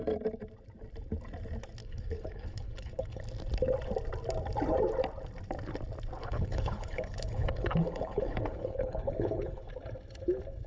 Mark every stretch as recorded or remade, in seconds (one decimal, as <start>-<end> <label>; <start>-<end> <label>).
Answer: 0.0-1.8 recorded; 1.8-3.2 remade; 3.2-6.2 recorded; 6.2-9.7 remade; 9.7-10.7 recorded